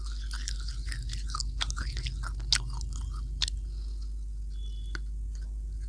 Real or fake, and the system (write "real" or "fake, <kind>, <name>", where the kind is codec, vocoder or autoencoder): real